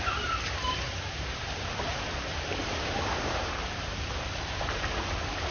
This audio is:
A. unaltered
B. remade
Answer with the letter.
B